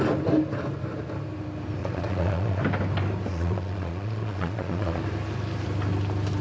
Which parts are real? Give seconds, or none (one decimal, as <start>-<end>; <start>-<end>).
0.0-1.8; 2.6-3.3; 5.0-6.4